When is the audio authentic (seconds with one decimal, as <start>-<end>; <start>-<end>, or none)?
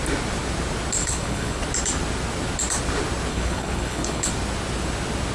0.0-1.0; 1.6-3.3; 4.3-5.3